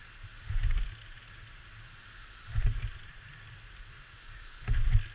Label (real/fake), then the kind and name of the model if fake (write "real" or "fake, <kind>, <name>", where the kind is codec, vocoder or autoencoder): real